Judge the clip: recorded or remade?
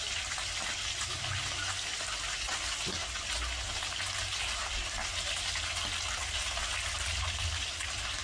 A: recorded